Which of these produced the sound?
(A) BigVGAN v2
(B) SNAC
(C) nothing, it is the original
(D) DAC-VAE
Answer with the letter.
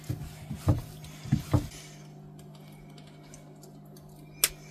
C